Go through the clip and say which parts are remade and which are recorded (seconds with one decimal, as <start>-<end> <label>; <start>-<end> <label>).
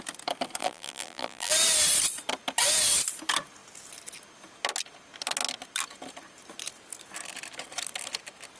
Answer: 0.0-0.6 recorded; 0.6-1.5 remade; 1.5-8.6 recorded